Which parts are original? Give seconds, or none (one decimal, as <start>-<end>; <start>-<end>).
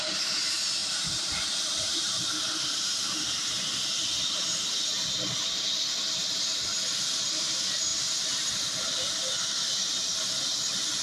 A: 0.0-0.8; 4.1-7.9; 8.6-11.0